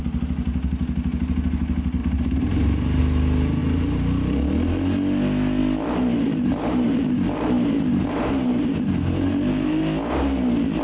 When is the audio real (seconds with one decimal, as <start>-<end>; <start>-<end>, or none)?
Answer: 0.0-2.0; 3.0-6.1; 9.8-10.8